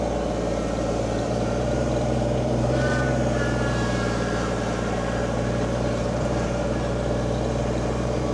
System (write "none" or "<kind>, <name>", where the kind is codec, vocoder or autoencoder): vocoder, BigVGAN v2